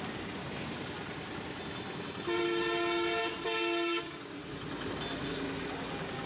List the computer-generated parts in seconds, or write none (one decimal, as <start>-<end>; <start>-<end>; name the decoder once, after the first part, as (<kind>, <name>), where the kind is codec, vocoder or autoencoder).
0.0-0.4 (codec, DAC); 4.0-4.4; 5.3-6.3